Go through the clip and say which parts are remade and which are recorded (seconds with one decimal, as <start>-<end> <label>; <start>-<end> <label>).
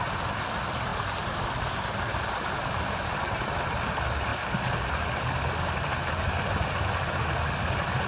0.0-8.1 recorded